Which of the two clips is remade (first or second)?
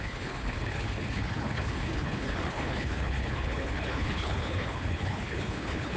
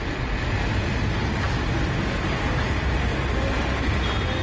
first